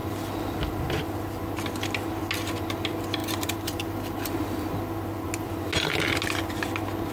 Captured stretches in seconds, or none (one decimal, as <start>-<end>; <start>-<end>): 0.0-3.2; 4.8-7.1